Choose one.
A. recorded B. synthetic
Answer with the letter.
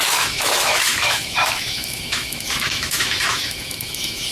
B